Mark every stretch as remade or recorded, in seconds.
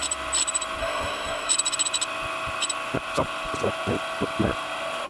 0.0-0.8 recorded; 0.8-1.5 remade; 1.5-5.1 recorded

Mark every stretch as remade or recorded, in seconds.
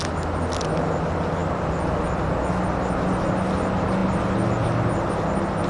0.0-5.7 recorded